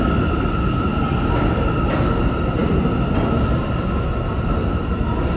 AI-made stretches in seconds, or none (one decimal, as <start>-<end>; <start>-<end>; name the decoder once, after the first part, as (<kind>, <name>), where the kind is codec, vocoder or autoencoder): none

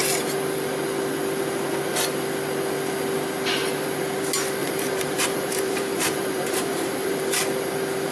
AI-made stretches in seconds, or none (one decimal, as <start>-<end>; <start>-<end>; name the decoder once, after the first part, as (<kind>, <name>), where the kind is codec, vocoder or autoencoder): 4.6-7.2 (vocoder, BigVGAN v2)

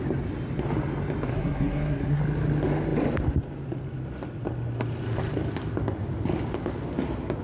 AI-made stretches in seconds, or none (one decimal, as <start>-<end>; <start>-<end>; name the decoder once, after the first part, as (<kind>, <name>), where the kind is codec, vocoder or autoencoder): 1.3-2.2 (codec, SNAC)

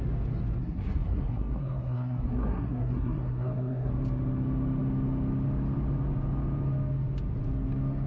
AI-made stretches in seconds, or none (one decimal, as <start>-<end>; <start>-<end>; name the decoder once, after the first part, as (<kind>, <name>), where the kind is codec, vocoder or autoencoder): 0.6-3.9 (codec, SNAC)

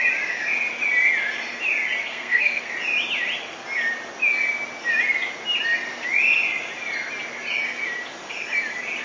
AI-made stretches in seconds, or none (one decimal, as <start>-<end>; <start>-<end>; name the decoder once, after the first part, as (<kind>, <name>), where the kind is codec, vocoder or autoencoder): 2.0-2.7 (codec, SNAC)

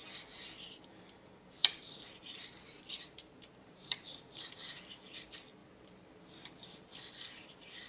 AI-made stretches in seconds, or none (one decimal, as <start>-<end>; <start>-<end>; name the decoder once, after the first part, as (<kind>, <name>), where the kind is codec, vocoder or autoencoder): 1.6-4.8 (vocoder, BigVGAN v2)

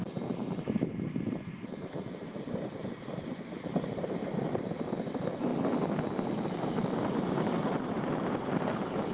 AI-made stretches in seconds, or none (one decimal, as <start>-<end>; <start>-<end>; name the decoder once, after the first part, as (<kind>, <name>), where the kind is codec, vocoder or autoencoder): 0.0-5.5 (vocoder, BigVGAN v2); 6.5-9.1

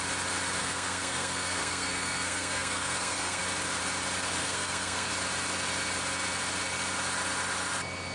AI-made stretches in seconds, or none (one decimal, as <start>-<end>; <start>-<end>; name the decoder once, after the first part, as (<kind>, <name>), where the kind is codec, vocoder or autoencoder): 0.6-3.4 (codec, SNAC); 4.4-5.1